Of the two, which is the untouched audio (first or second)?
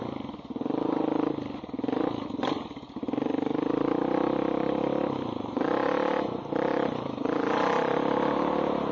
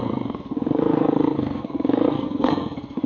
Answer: first